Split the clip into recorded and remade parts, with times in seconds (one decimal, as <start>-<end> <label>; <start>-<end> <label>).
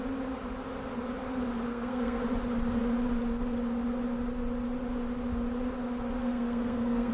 0.0-1.7 recorded; 1.7-2.2 remade; 2.2-6.2 recorded; 6.2-7.1 remade